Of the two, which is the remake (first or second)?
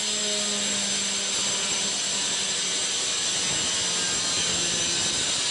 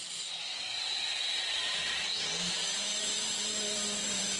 second